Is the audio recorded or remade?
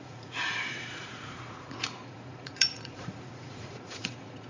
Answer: remade